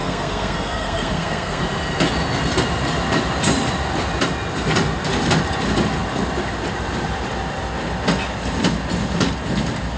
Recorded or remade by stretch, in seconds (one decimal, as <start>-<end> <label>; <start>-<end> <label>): 0.0-1.6 remade; 1.6-10.0 recorded